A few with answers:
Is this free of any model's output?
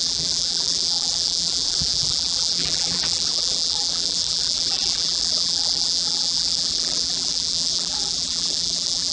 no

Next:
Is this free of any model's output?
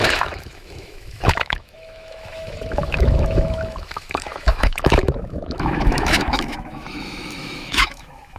no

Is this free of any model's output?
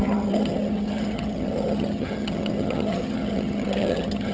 no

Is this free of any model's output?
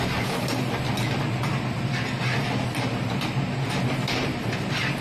yes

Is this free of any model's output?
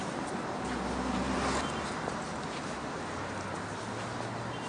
yes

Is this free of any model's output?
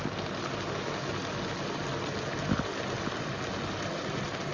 yes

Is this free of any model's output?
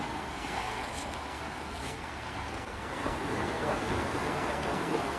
no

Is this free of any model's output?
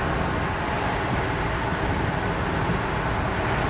yes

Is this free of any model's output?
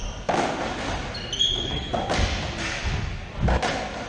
yes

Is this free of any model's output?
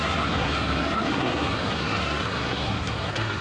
no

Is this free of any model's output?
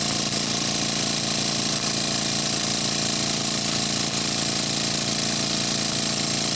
yes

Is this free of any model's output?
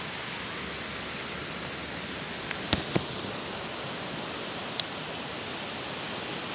yes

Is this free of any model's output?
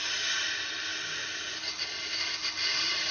yes